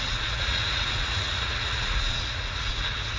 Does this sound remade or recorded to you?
remade